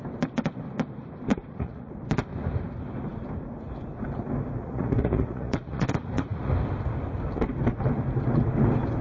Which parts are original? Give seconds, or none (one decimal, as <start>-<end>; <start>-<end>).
0.0-1.3; 1.9-4.6; 6.5-9.0